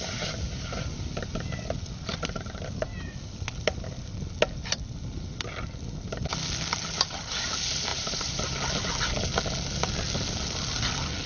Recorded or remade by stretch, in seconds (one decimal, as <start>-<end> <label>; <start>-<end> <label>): 0.0-7.9 recorded; 7.9-8.5 remade; 8.5-11.3 recorded

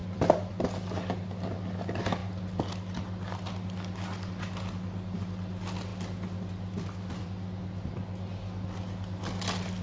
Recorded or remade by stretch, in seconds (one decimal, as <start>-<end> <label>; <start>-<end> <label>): 0.0-0.5 remade; 0.5-7.1 recorded; 7.1-7.9 remade; 7.9-9.8 recorded

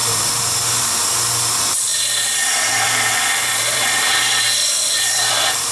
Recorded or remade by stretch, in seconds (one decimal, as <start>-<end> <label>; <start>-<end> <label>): 0.0-1.9 recorded; 1.9-5.3 remade; 5.3-5.7 recorded